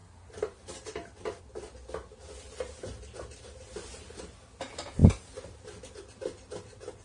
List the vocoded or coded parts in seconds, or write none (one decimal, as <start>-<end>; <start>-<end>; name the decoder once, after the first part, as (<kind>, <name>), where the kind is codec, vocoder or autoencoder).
none